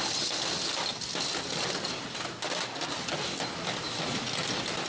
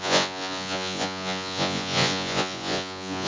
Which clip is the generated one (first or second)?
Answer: second